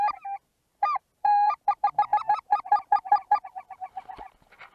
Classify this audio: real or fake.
fake